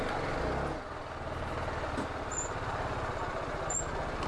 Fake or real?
real